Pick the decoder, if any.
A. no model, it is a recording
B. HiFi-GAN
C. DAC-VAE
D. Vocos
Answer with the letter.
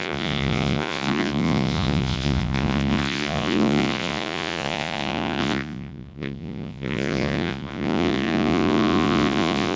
D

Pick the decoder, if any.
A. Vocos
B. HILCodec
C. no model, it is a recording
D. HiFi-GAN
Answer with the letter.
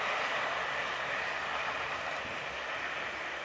C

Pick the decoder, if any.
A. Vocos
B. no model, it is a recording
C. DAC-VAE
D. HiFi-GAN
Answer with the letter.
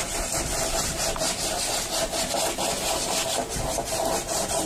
B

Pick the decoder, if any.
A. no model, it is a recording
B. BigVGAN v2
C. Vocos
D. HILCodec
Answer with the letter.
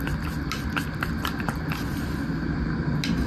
A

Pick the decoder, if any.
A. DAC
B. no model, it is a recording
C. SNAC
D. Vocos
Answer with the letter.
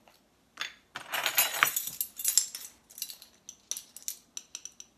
B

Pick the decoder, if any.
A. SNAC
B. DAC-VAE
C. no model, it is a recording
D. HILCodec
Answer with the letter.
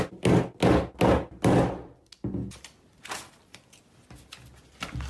C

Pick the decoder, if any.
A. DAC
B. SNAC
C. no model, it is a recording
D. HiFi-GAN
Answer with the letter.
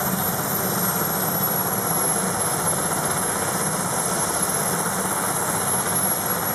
C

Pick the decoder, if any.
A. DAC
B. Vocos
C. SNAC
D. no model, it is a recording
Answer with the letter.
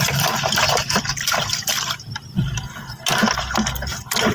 D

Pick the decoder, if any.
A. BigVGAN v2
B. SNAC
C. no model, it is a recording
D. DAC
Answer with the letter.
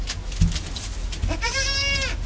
C